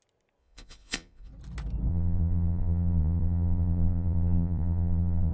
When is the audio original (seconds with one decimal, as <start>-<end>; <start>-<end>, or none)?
0.0-0.4; 1.3-1.9